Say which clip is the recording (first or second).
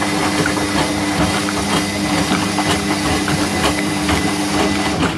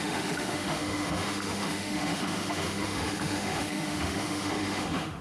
first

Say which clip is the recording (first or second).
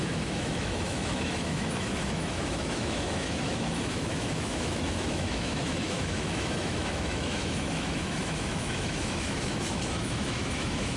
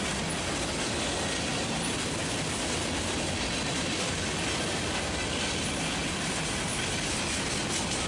second